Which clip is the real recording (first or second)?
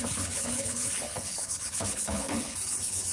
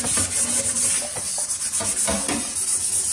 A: second